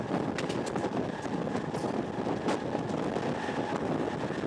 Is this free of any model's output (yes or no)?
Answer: yes